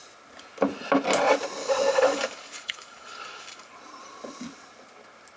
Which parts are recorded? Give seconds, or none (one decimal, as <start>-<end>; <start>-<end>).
0.0-1.6; 3.7-5.4